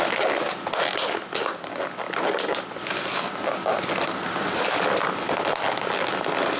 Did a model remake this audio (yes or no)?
no